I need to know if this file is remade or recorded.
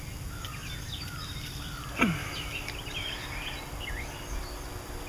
recorded